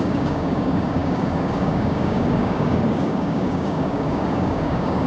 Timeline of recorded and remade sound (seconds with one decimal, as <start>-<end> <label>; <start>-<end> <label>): 0.0-5.1 remade